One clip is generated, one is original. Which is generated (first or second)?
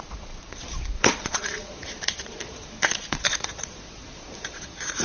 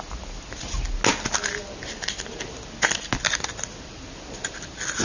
first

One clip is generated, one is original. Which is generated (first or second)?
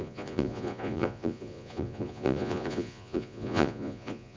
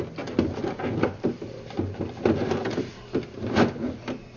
first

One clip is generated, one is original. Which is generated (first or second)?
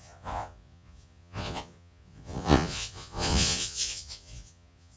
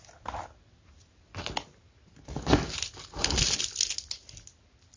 first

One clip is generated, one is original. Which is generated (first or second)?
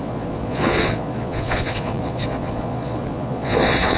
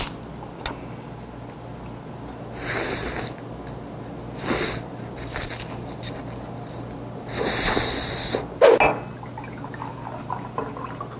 first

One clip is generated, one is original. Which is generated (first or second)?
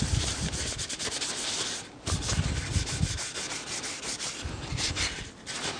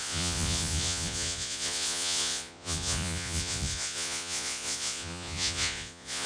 second